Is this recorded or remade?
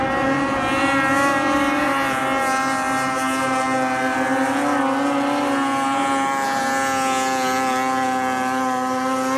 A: recorded